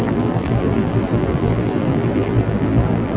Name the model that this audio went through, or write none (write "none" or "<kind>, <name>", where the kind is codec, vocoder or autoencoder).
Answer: vocoder, BigVGAN v2